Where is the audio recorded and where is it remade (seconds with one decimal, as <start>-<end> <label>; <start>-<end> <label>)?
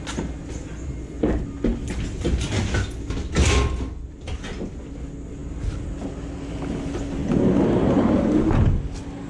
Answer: 0.0-9.3 recorded